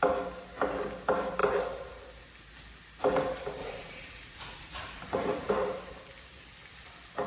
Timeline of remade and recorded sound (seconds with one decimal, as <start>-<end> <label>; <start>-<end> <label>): 0.0-3.6 recorded; 3.6-5.5 remade; 5.5-7.3 recorded